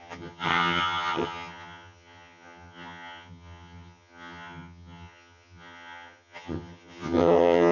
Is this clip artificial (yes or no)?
yes